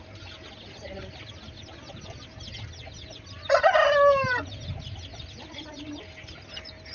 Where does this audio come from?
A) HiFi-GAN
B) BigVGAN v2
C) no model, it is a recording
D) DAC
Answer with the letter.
C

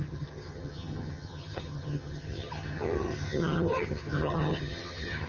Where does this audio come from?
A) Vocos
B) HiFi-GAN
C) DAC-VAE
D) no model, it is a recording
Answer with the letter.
B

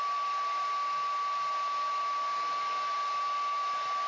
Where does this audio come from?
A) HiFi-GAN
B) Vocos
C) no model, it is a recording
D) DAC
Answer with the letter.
C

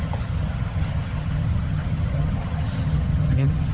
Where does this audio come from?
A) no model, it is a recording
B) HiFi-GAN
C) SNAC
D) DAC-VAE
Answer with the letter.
B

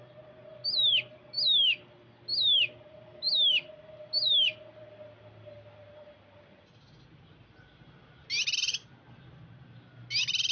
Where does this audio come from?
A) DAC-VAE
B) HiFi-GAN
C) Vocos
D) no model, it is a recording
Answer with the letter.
D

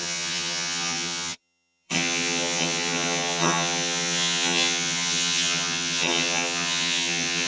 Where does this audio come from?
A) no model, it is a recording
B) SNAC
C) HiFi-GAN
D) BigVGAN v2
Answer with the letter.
C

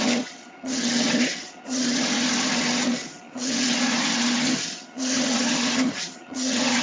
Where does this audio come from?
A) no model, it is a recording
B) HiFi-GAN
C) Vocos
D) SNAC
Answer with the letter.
B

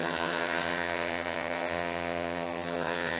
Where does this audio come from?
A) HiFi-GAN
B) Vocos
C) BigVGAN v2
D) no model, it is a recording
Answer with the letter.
A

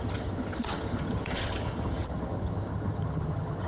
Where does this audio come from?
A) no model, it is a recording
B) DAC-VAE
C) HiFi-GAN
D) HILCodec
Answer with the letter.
C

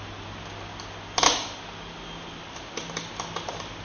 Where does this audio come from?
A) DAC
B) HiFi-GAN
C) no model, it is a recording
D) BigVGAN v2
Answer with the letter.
C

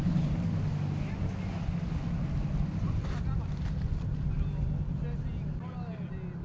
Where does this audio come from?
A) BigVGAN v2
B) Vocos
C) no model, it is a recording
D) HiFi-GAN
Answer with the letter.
C